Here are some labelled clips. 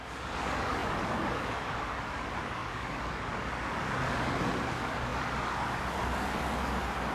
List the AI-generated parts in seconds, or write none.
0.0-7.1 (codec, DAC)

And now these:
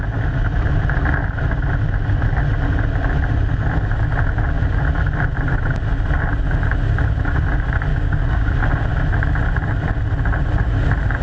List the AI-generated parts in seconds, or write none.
7.9-8.5 (codec, DAC)

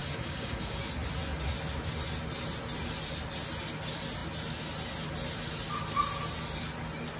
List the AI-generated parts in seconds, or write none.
0.0-0.8 (codec, DAC)

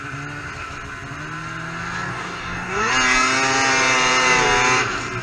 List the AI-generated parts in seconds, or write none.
2.1-2.9 (codec, DAC)

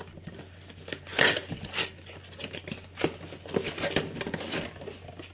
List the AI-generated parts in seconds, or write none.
none

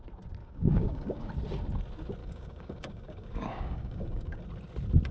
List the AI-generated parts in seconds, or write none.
0.4-1.3 (codec, DAC); 2.2-4.4

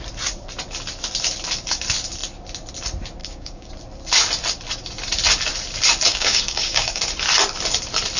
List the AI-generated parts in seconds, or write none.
3.2-3.7 (codec, DAC); 6.1-7.0

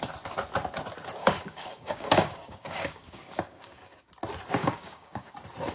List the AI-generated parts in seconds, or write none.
1.2-4.1 (codec, DAC); 4.6-5.3